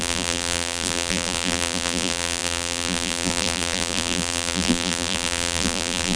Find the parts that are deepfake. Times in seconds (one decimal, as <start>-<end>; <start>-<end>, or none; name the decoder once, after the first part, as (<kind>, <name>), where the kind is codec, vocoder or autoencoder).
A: 0.0-6.2 (vocoder, BigVGAN v2)